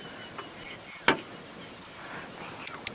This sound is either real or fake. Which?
real